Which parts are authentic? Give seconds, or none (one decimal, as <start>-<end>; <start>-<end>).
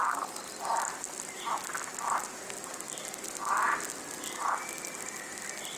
0.0-5.8